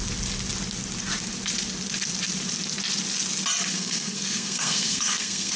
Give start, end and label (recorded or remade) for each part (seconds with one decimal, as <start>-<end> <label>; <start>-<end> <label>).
0.0-3.7 recorded; 3.7-5.6 remade